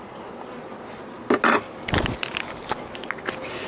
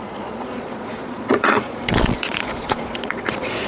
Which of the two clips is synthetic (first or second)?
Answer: second